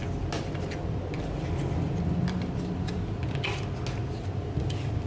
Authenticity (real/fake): real